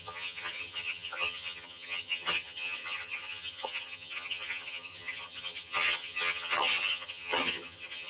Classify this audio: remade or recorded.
remade